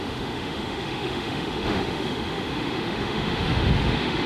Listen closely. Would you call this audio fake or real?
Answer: fake